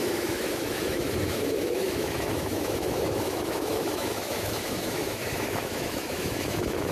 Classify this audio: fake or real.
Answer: fake